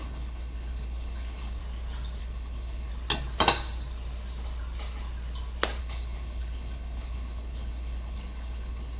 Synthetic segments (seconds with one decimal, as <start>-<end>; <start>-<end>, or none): 0.0-1.6; 2.2-2.9; 5.8-9.0